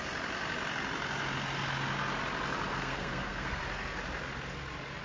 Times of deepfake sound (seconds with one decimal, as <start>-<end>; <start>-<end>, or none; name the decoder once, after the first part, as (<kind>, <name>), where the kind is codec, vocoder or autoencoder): 2.7-3.5 (codec, SNAC)